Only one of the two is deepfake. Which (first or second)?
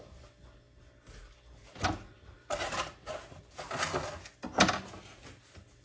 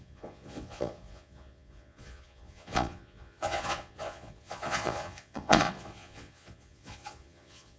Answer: second